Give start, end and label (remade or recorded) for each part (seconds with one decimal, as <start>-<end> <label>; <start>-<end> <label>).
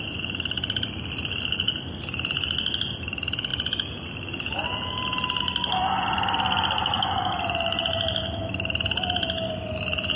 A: 0.0-10.2 recorded